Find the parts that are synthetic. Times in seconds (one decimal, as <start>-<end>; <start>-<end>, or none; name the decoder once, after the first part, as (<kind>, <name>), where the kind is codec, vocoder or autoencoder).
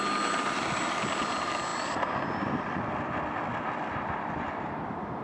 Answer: none